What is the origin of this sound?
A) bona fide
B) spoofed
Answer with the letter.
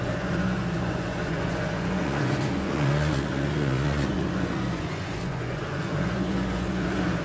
B